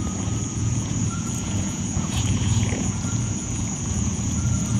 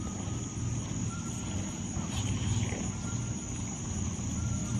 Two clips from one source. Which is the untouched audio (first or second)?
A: second